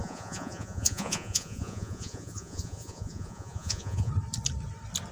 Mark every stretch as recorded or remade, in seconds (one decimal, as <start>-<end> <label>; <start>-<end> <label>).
0.0-4.1 remade; 4.1-5.1 recorded